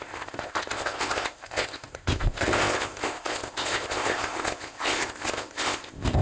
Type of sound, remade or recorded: remade